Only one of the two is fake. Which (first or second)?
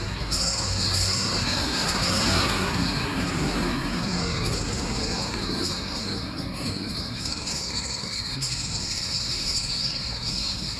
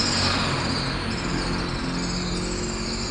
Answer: first